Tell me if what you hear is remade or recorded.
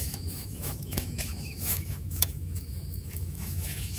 remade